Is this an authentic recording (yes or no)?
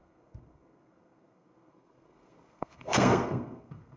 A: no